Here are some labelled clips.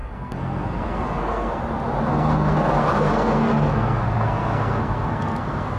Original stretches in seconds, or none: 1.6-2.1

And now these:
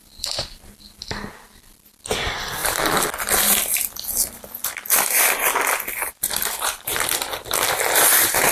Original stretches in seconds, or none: 0.0-8.5

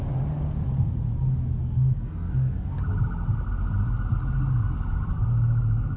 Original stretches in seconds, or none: 0.0-1.6; 2.8-6.0

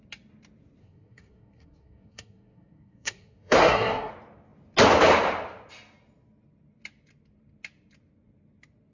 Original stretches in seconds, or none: 0.0-0.8; 4.1-8.9

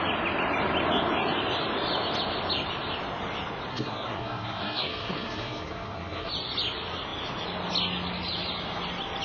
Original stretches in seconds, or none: 0.0-3.7; 6.3-9.2